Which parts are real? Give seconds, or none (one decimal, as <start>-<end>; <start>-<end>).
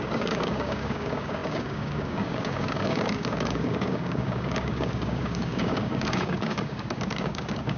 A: none